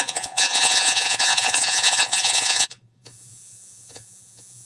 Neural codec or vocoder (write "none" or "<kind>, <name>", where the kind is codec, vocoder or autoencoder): vocoder, Vocos